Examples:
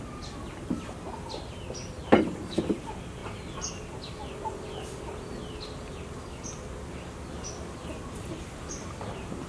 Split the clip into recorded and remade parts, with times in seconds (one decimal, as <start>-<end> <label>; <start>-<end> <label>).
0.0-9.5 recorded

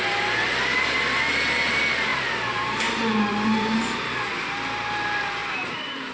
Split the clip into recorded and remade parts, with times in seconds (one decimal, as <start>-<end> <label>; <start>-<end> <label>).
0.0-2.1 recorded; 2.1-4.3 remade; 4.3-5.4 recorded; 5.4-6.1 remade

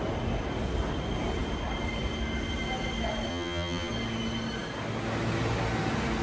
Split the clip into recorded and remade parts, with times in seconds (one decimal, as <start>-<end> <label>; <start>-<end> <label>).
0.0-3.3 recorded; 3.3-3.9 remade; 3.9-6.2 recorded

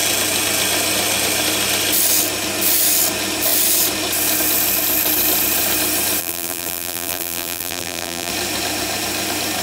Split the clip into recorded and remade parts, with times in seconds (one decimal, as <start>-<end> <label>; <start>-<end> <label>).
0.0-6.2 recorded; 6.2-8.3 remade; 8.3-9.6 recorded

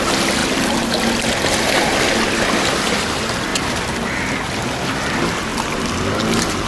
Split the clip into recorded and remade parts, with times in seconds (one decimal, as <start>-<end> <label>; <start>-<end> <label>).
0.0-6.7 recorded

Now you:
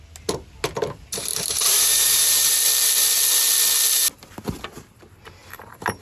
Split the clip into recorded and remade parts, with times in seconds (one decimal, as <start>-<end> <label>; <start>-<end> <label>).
0.0-1.3 recorded; 1.3-2.5 remade; 2.5-5.4 recorded; 5.4-6.0 remade